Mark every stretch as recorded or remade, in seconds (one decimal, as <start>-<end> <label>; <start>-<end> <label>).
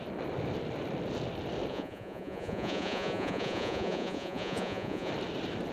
0.0-1.7 recorded; 1.7-5.1 remade; 5.1-5.7 recorded